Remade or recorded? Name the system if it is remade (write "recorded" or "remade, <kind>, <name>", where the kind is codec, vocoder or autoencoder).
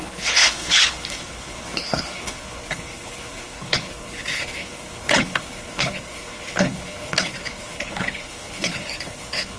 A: remade, codec, HILCodec